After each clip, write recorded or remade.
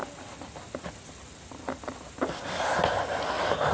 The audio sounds recorded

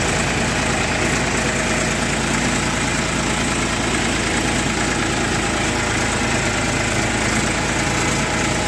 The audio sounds recorded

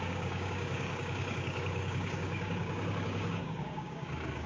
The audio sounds remade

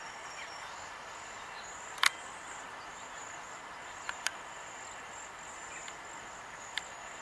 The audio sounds recorded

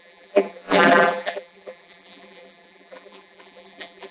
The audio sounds remade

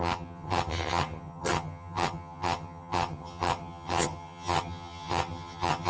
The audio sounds remade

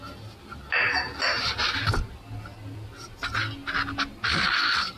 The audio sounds recorded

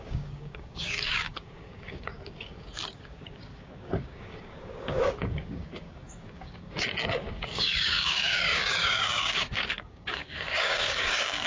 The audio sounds remade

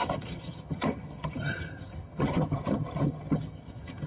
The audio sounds remade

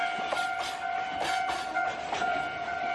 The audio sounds recorded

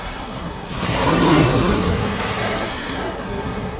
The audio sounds remade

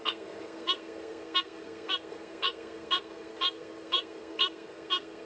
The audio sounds remade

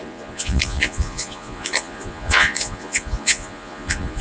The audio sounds remade